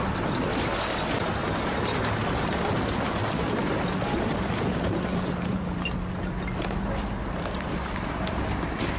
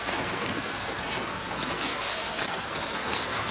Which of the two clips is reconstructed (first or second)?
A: second